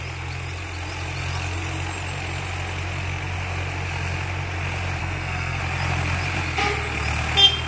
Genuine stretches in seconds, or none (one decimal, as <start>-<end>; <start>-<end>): 0.0-5.0; 5.6-7.7